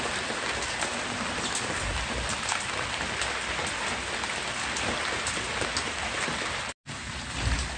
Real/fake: real